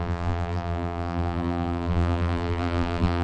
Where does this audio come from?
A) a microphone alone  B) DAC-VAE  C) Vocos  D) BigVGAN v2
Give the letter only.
D